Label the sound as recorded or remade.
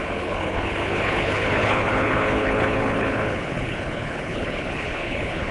remade